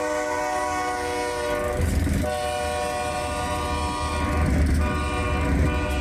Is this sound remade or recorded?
recorded